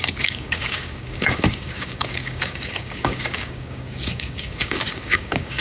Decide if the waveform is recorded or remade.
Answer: remade